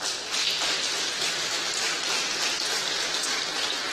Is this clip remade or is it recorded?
recorded